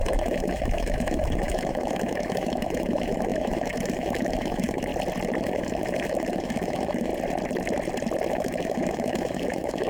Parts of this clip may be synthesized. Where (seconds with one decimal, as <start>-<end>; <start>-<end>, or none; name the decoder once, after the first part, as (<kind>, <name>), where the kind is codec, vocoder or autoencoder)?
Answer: 0.0-4.9 (autoencoder, DAC-VAE); 5.4-7.1; 8.3-9.9